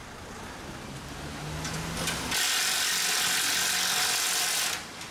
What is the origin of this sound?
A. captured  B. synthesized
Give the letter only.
A